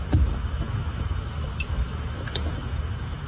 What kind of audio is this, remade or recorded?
remade